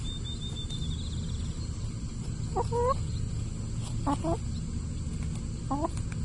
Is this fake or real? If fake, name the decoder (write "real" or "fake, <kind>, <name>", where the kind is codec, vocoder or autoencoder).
real